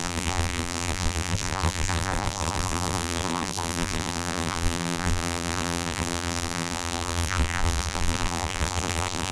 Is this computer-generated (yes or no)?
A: yes